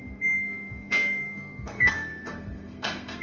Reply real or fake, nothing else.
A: fake